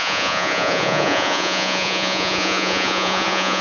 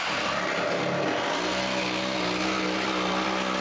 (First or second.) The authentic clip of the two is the second